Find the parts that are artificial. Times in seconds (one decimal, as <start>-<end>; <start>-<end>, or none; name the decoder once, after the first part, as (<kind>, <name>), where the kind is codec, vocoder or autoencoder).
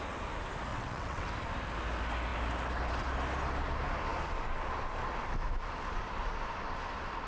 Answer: 0.7-1.3 (vocoder, WaveNeXt)